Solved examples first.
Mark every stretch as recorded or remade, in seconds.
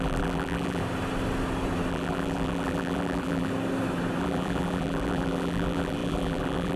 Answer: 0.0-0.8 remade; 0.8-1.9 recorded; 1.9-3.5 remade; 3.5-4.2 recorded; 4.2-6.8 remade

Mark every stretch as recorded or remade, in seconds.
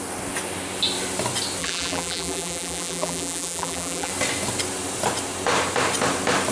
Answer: 0.0-1.6 recorded; 1.6-4.1 remade; 4.1-6.5 recorded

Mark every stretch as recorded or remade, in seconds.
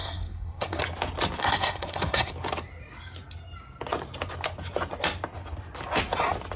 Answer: 0.0-0.8 remade; 0.8-1.4 recorded; 1.4-2.3 remade; 2.3-6.6 recorded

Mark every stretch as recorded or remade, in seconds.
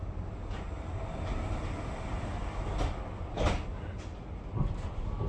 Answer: 0.0-5.3 recorded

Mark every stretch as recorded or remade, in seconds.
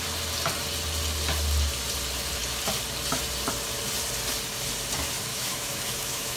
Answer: 0.0-5.3 recorded; 5.3-6.4 remade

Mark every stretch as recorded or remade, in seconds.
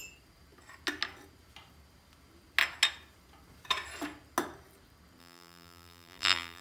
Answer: 0.0-5.2 recorded; 5.2-6.6 remade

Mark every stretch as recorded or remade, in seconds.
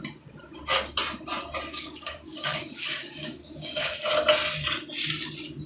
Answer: 0.0-1.7 recorded; 1.7-4.1 remade; 4.1-5.7 recorded